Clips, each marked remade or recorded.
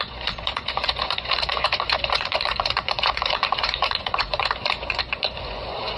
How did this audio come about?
remade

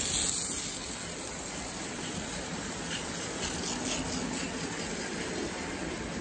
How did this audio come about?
recorded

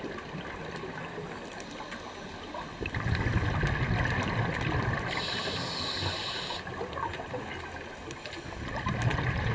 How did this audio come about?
recorded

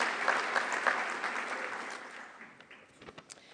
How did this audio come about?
recorded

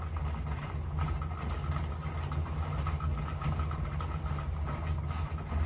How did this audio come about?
recorded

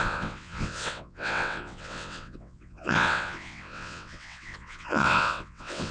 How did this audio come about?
remade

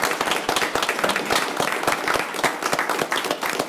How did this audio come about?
recorded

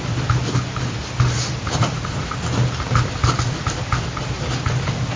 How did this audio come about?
recorded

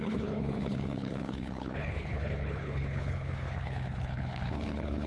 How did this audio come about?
remade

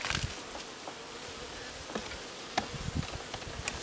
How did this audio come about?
recorded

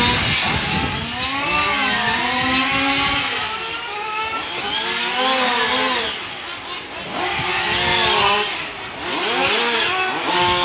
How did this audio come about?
recorded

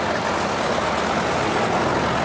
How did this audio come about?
recorded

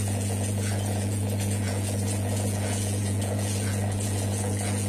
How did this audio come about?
remade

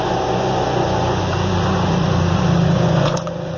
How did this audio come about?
remade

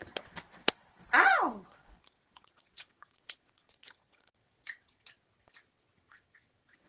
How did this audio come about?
remade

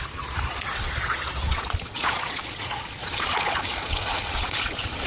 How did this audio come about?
remade